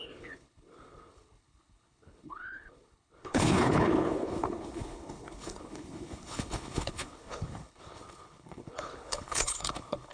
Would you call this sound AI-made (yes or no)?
yes